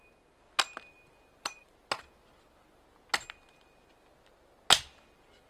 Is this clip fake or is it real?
real